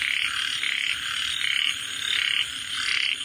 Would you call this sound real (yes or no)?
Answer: yes